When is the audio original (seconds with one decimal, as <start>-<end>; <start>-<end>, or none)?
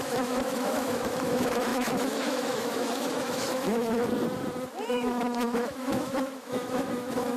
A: 4.0-4.9